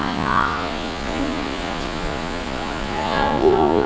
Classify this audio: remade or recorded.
remade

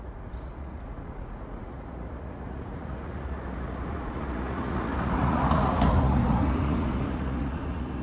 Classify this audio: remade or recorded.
remade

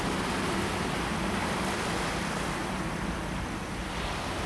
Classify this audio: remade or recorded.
recorded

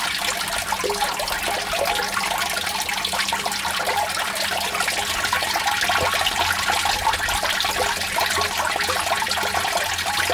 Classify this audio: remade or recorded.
recorded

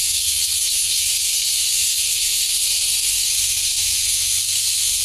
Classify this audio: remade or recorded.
remade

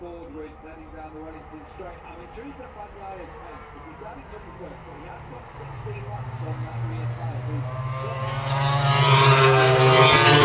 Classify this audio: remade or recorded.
recorded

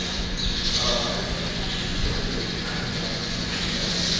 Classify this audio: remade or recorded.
remade